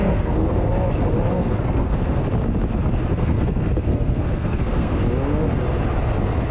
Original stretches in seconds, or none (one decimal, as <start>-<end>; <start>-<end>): 0.7-1.3; 2.2-3.1; 4.9-6.5